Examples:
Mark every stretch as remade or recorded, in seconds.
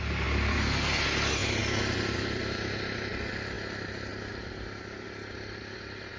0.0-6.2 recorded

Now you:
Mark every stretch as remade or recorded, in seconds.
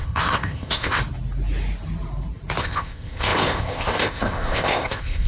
0.0-1.0 remade; 1.0-2.6 recorded; 2.6-5.3 remade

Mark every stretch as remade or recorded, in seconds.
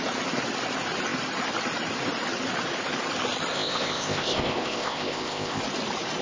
0.0-3.5 recorded; 3.5-5.6 remade; 5.6-6.2 recorded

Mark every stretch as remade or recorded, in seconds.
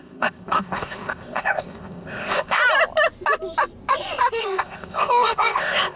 0.0-2.6 remade; 2.6-4.4 recorded; 4.4-6.0 remade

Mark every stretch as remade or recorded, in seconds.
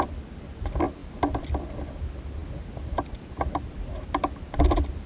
0.0-5.1 recorded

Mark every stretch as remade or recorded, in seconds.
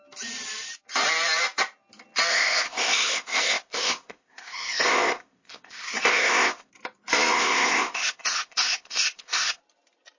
0.0-2.3 recorded; 2.3-6.7 remade; 6.7-7.3 recorded; 7.3-9.6 remade; 9.6-10.2 recorded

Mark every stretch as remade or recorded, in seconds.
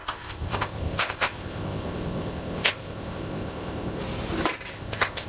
0.0-4.0 remade; 4.0-4.7 recorded; 4.7-5.3 remade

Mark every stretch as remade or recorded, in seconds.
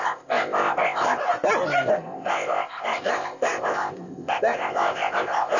0.0-1.2 remade; 1.2-1.9 recorded; 1.9-5.6 remade